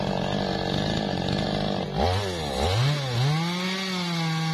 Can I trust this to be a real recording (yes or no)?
yes